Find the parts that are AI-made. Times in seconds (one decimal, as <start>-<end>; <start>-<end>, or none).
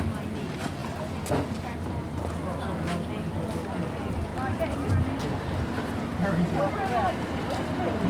none